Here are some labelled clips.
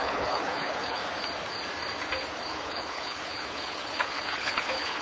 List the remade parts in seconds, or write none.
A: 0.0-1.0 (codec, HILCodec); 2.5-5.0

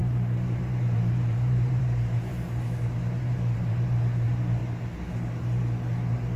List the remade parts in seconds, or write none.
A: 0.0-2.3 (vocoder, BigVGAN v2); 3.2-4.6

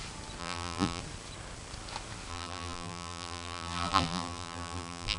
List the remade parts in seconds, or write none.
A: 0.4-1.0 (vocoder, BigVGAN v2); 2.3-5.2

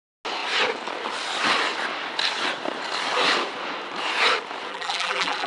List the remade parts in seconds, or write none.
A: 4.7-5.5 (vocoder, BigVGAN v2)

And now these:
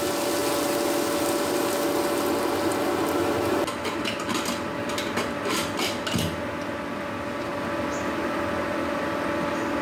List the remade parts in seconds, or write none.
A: none

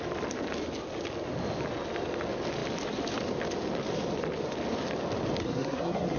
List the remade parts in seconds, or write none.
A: 5.4-6.2 (codec, SNAC)

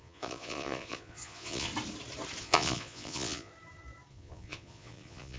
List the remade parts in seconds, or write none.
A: 0.0-1.7 (vocoder, Vocos); 2.4-3.5; 4.1-5.4

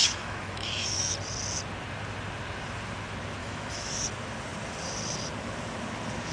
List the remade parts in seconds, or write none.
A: 0.0-1.1 (autoencoder, DAC-VAE); 3.4-3.9